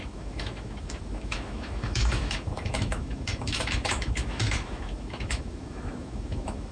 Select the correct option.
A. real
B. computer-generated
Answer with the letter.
B